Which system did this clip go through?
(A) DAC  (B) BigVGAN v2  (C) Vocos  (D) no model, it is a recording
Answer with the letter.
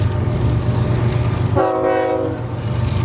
D